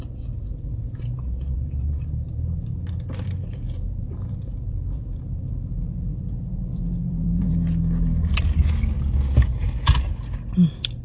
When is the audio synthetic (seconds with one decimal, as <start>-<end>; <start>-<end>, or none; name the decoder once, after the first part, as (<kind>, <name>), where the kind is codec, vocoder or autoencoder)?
0.0-7.5 (vocoder, BigVGAN v2); 9.8-11.0